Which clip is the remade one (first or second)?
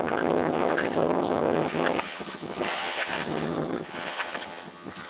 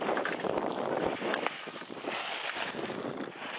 first